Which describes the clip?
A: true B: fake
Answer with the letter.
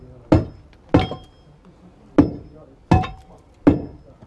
A